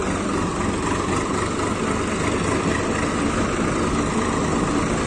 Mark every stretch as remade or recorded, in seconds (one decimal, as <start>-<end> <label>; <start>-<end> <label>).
0.0-5.1 recorded